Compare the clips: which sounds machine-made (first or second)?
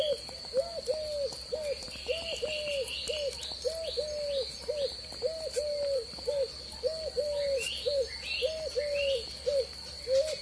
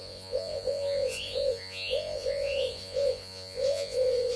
second